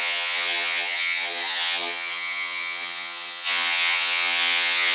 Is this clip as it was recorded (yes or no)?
no